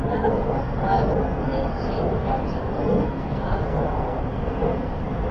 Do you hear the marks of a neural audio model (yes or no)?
yes